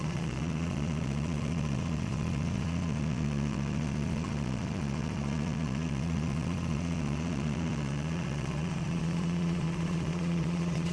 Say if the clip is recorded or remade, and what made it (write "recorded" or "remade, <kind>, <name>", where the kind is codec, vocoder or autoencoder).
remade, vocoder, Vocos